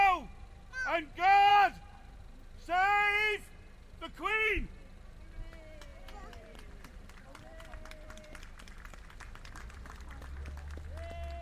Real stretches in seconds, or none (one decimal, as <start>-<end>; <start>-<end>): 0.0-5.9; 10.4-11.4